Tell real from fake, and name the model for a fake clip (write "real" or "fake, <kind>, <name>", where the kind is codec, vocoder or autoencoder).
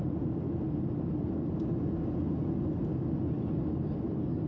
real